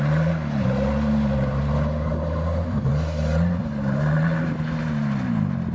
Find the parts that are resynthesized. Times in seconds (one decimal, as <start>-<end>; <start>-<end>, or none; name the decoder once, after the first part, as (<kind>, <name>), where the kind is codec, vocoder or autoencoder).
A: none